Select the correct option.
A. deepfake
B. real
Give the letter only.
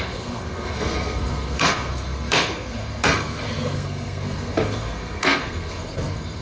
A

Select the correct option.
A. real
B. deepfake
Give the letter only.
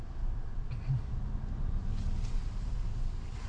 A